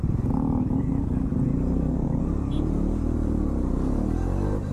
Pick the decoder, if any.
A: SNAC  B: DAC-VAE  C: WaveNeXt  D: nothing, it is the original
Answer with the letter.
D